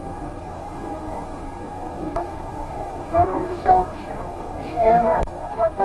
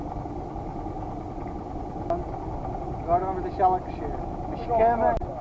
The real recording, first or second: second